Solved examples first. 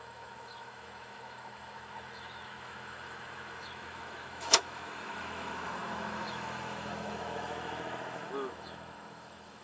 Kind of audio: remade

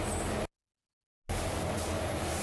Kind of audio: recorded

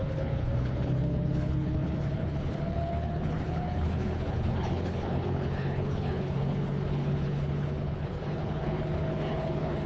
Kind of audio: remade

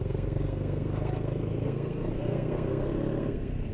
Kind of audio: remade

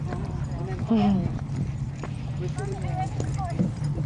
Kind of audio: recorded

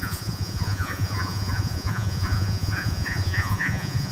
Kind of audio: remade